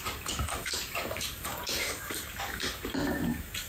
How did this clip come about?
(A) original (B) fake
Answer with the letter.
B